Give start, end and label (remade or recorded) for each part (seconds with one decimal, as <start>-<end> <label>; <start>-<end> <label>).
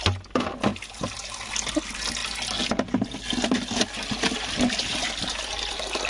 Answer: 0.0-0.7 recorded; 0.7-1.5 remade; 1.5-6.1 recorded